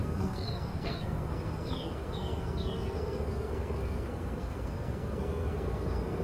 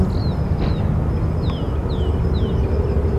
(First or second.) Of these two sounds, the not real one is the first